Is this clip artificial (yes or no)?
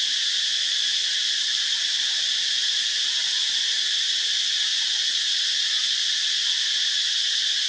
no